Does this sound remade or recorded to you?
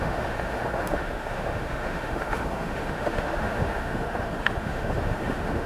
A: remade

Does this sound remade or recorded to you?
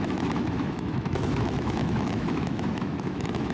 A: remade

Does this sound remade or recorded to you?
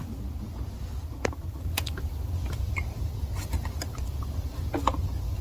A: recorded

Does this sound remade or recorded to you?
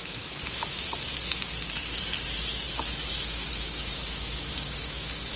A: remade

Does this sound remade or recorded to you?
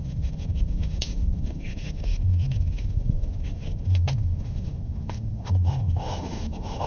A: remade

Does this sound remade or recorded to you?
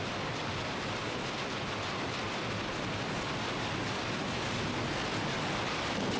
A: recorded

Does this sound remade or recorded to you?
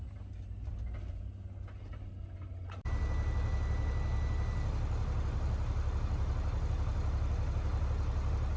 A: recorded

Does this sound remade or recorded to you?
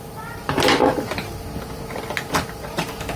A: recorded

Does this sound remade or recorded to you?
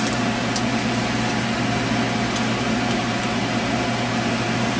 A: recorded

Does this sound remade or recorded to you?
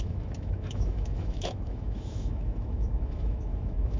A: remade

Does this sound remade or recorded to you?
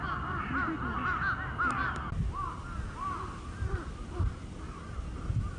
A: recorded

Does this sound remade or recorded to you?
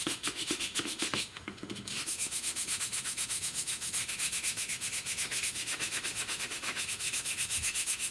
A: remade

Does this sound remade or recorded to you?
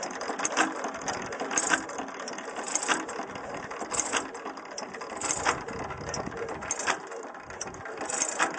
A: recorded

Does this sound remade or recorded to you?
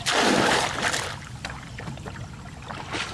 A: recorded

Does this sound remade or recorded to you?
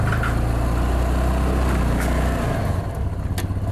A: recorded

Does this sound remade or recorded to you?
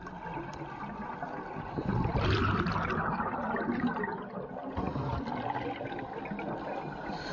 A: recorded